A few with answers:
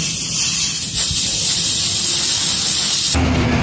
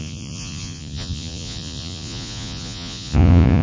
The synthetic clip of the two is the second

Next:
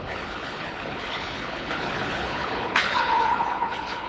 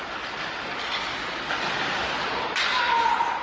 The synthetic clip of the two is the first